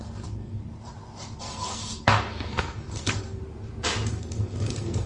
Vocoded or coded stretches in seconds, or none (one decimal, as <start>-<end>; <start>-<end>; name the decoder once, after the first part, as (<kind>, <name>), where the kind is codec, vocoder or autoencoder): 0.0-0.6 (codec, SNAC); 1.4-3.4; 4.1-5.1